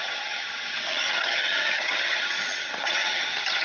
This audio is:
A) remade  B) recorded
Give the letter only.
A